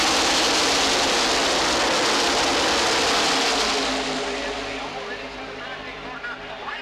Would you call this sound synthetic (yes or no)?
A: no